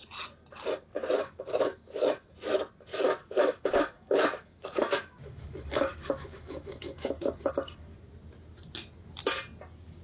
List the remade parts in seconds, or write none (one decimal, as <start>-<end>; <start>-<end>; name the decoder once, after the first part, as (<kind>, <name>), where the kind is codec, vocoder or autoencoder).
1.2-2.4 (autoencoder, DAC-VAE); 2.9-7.5